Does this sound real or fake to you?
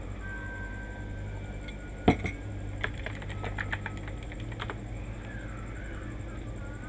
real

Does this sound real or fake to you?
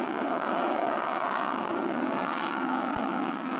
fake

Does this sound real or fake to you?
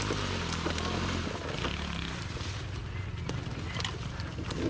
real